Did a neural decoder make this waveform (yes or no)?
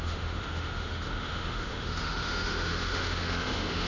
yes